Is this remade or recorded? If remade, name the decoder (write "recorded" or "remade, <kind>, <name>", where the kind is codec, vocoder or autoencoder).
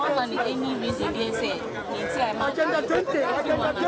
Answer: recorded